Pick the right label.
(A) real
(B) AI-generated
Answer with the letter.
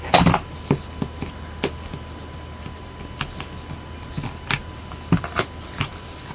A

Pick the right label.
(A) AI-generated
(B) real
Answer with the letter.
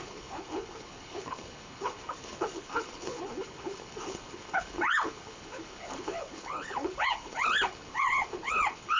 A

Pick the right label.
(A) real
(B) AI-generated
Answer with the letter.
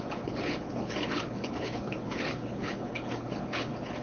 B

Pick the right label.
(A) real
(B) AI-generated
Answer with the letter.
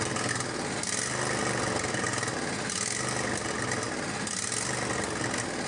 A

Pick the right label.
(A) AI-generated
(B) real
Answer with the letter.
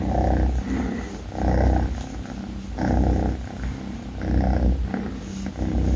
B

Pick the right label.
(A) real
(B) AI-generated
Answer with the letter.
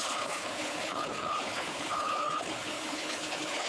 B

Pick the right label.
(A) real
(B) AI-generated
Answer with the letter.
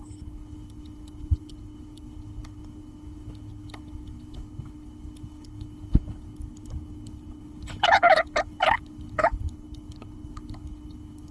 B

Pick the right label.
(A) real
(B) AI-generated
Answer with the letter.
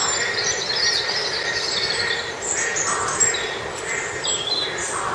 A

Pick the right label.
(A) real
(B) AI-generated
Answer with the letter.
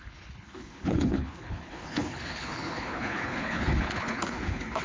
B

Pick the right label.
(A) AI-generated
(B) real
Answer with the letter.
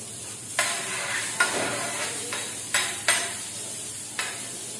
B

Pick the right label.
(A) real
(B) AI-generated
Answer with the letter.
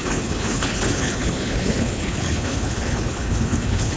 B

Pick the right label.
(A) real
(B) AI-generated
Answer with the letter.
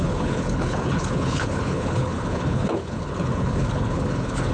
B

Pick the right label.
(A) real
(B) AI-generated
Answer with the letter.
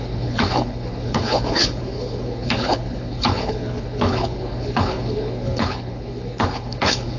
B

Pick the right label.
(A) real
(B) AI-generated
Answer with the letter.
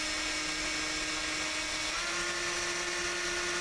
A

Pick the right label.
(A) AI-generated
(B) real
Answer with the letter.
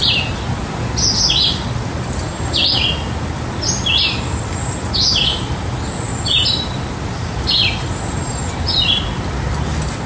B